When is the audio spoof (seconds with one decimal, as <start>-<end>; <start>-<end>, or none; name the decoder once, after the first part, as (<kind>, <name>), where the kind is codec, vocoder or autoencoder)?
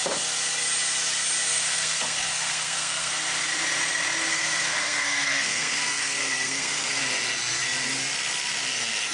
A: 1.5-3.1 (codec, SNAC); 4.3-7.0